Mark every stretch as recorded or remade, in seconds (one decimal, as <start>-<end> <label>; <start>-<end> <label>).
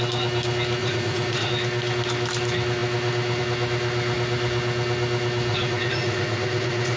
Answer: 0.0-0.8 recorded; 0.8-1.5 remade; 1.5-5.5 recorded; 5.5-7.0 remade